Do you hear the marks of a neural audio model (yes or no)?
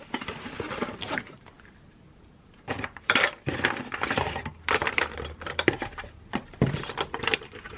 yes